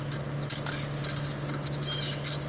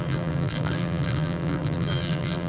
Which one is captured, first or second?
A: first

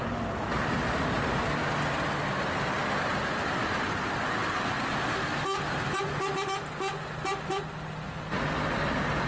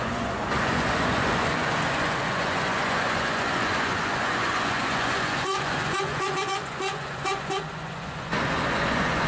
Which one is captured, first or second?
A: first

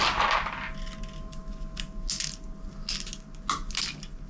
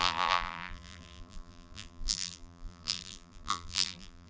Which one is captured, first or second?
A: first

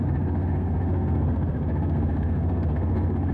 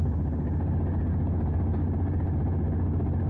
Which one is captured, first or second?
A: second